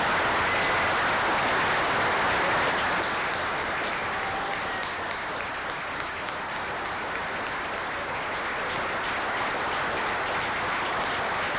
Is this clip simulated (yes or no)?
no